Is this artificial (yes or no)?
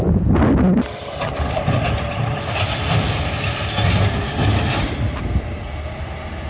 no